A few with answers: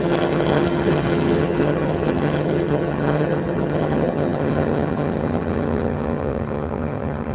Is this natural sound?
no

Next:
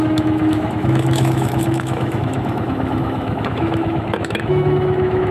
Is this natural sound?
no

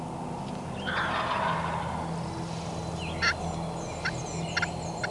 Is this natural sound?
yes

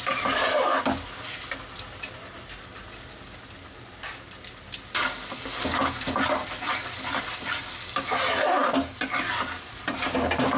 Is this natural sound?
yes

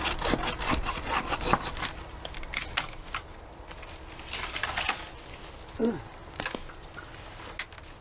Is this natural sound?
yes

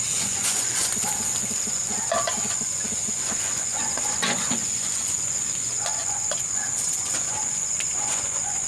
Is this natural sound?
no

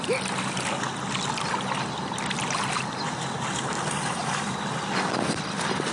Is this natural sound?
no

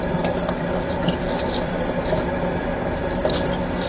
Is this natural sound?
yes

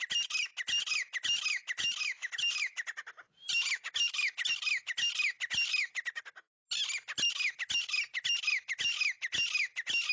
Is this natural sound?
yes